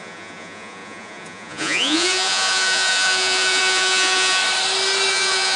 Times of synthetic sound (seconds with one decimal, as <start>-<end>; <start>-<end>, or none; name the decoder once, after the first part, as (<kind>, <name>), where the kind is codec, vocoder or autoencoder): 0.0-4.4 (vocoder, Vocos); 5.1-5.6